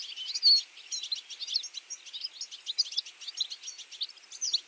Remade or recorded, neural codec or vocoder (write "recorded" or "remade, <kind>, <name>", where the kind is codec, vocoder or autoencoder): recorded